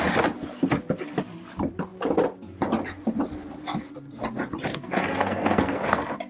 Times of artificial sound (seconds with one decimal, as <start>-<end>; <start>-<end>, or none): 4.7-6.3